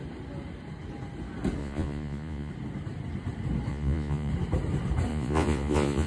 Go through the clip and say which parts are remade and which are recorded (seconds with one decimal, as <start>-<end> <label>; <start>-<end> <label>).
0.0-1.6 recorded; 1.6-2.5 remade; 2.5-3.7 recorded; 3.7-4.3 remade; 4.3-5.1 recorded; 5.1-6.1 remade

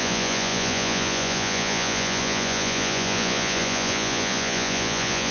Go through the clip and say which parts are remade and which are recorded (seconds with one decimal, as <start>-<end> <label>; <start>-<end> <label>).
0.0-5.3 remade

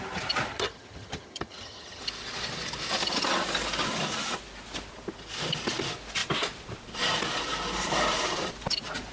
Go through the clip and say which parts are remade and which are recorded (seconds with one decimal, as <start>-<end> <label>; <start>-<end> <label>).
0.0-0.5 recorded; 0.5-2.0 remade; 2.0-9.1 recorded

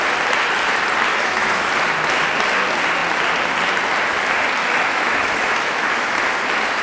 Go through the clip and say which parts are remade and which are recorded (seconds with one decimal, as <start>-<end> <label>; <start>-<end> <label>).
0.0-1.1 recorded; 1.1-1.7 remade; 1.7-4.6 recorded; 4.6-6.2 remade; 6.2-6.8 recorded